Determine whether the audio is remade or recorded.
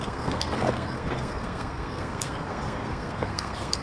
remade